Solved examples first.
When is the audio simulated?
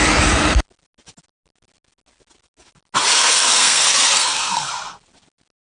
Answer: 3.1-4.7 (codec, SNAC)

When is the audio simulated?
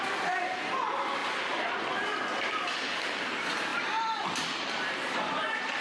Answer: 1.2-1.8 (vocoder, BigVGAN v2); 3.7-5.8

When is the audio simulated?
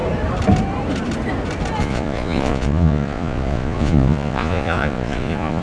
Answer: 1.8-5.6 (vocoder, Vocos)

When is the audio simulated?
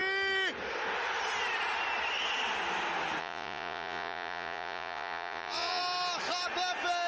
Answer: 3.2-5.8 (vocoder, Vocos)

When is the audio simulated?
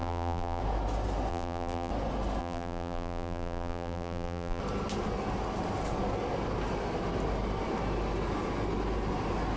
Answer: 0.0-0.6 (vocoder, BigVGAN v2); 1.3-1.9; 2.4-4.6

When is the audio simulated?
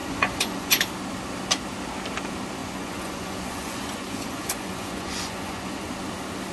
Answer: 0.0-0.8 (vocoder, Vocos); 2.6-5.9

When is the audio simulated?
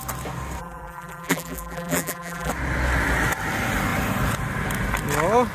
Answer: 0.6-2.5 (vocoder, BigVGAN v2)